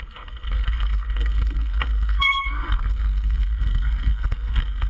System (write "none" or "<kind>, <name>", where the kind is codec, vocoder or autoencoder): codec, SNAC